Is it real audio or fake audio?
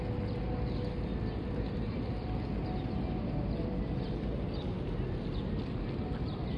real